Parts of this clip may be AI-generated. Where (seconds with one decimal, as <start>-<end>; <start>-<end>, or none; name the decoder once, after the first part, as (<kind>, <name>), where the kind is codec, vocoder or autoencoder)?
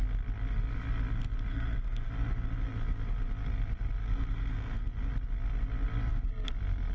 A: 1.5-2.1 (codec, SNAC); 4.0-4.8